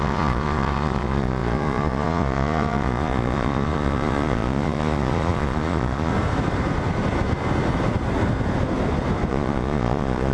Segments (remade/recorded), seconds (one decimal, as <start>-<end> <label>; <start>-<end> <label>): 0.0-6.1 remade; 6.1-9.3 recorded; 9.3-10.3 remade